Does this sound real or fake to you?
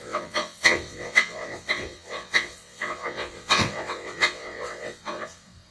fake